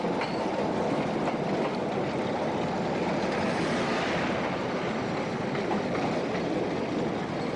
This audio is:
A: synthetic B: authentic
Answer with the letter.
B